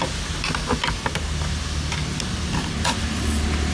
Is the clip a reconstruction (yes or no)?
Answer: no